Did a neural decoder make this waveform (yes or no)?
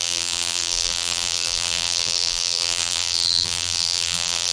yes